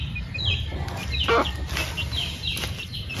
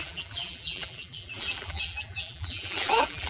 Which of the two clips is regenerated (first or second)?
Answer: second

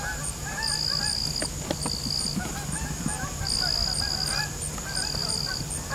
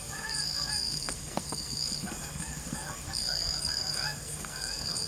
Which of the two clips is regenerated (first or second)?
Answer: second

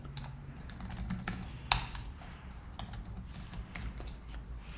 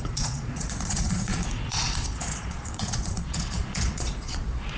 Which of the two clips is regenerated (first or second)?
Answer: second